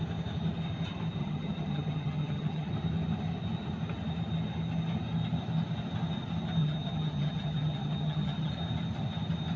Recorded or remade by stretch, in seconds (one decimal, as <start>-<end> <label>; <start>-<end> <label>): 0.0-1.2 recorded; 1.2-2.7 remade; 2.7-6.6 recorded; 6.6-8.5 remade; 8.5-9.6 recorded